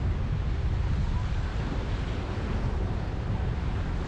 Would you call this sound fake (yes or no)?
no